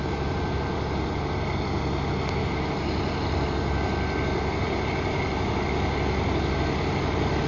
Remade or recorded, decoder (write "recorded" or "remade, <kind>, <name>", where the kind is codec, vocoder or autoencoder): recorded